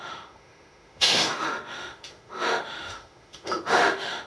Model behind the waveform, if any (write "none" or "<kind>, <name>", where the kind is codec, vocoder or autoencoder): autoencoder, DAC-VAE